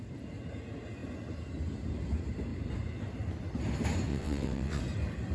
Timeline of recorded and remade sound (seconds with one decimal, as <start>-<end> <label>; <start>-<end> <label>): 0.0-4.1 recorded; 4.1-4.8 remade; 4.8-5.3 recorded